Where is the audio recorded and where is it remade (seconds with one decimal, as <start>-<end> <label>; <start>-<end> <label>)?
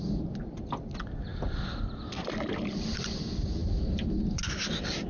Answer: 0.0-5.1 recorded